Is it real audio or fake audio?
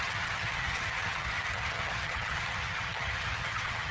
fake